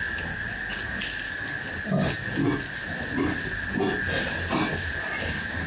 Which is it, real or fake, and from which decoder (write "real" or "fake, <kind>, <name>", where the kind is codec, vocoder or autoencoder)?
real